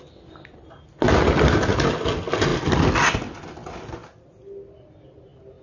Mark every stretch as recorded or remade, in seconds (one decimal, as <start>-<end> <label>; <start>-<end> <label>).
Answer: 0.0-2.5 recorded; 2.5-3.9 remade; 3.9-5.6 recorded